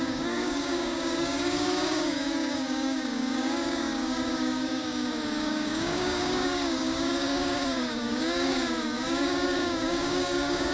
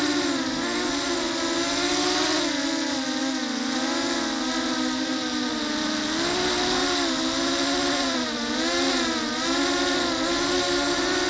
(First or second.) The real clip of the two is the second